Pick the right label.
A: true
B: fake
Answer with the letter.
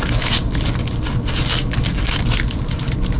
A